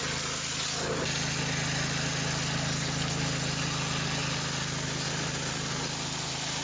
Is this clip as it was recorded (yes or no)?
yes